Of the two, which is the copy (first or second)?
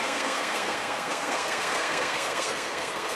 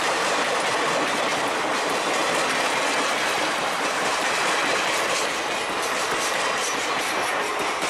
first